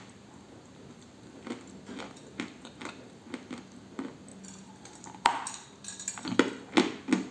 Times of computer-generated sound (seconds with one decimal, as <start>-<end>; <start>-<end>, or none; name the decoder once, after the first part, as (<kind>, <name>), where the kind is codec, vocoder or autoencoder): none